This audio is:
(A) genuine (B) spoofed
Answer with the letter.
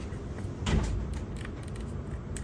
A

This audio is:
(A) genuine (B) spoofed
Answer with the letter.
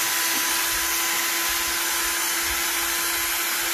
A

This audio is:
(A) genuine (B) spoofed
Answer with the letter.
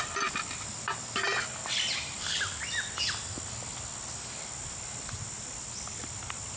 A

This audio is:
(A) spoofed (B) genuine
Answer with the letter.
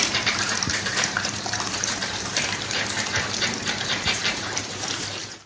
A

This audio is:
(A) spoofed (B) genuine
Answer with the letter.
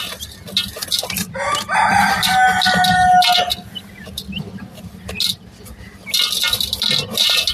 B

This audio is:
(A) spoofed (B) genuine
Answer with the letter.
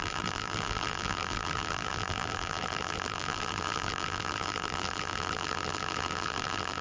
A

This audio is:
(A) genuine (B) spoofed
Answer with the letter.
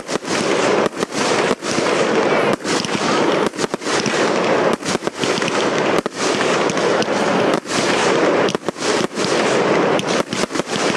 A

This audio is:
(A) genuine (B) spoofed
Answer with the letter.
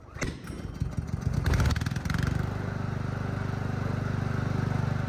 A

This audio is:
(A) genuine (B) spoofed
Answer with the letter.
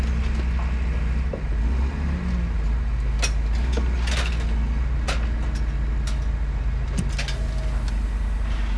A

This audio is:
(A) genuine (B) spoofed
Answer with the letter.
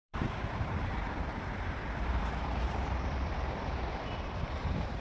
B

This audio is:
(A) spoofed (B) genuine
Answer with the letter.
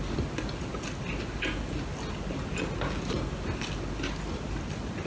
B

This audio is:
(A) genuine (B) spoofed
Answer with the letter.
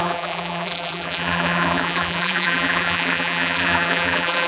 B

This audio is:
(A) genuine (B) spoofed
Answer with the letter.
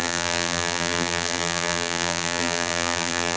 B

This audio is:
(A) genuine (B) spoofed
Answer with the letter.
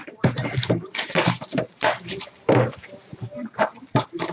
B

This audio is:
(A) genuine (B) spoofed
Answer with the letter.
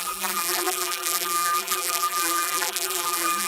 B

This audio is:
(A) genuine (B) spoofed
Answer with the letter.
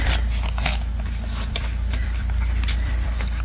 B